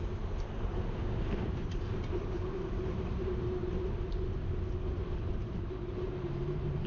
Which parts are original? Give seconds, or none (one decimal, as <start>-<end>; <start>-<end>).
3.6-5.3